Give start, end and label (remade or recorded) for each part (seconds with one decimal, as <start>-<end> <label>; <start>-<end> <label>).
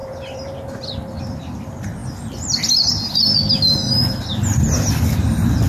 0.0-1.2 remade; 1.2-5.7 recorded